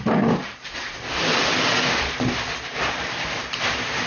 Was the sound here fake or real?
real